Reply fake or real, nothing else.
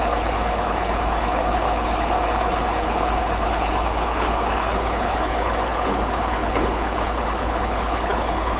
fake